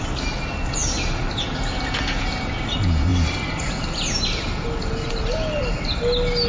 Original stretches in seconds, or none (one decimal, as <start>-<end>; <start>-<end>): 0.0-6.5